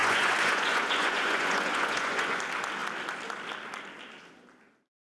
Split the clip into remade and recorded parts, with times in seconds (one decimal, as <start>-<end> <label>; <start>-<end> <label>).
0.0-2.4 remade; 2.4-5.2 recorded